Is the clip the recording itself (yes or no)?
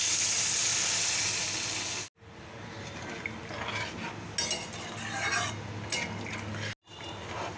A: yes